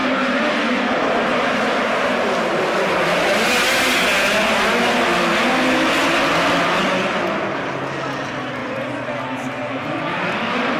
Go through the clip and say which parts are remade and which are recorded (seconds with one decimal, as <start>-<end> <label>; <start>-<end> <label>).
0.0-0.8 remade; 0.8-1.3 recorded; 1.3-2.2 remade; 2.2-8.6 recorded; 8.6-10.0 remade; 10.0-10.8 recorded

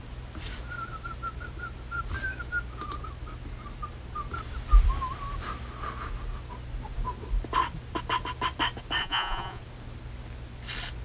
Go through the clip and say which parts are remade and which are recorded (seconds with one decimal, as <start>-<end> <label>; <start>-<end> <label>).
0.0-9.0 recorded; 9.0-9.6 remade; 9.6-11.0 recorded

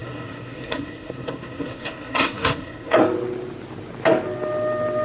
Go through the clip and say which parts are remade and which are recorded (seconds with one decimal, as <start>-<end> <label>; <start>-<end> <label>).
0.0-3.0 remade; 3.0-5.0 recorded

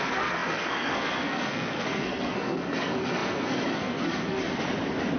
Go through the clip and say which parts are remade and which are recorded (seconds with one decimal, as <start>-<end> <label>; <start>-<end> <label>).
0.0-4.4 remade; 4.4-5.2 recorded

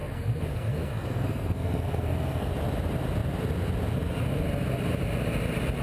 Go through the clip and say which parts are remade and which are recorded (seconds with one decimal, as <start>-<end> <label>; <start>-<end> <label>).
0.0-2.5 remade; 2.5-5.8 recorded

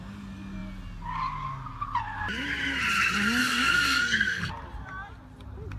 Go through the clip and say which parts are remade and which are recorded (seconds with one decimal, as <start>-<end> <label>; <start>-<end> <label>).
0.0-3.4 recorded; 3.4-4.5 remade; 4.5-5.8 recorded